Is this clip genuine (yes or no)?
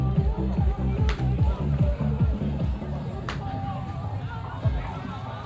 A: yes